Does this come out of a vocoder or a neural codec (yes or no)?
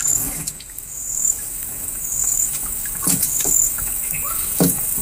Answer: yes